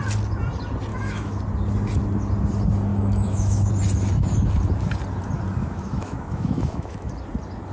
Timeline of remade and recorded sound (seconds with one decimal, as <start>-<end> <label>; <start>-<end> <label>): 0.0-0.9 recorded; 0.9-1.4 remade; 1.4-2.9 recorded; 2.9-3.7 remade; 3.7-5.6 recorded; 5.6-7.1 remade; 7.1-7.7 recorded